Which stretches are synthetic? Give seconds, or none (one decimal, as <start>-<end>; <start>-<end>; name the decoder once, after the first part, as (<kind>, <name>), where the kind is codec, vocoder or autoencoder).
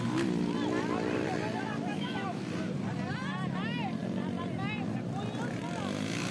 1.9-2.4 (autoencoder, DAC-VAE)